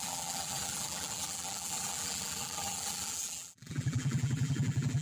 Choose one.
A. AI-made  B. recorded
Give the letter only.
A